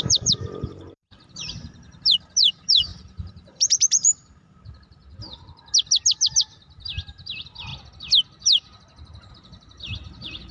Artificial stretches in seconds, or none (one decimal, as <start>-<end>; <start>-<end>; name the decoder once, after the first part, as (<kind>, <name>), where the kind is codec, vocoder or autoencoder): 0.0-5.0 (vocoder, BigVGAN v2); 6.4-7.7; 9.3-10.5